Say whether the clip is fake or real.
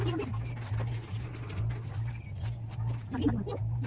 real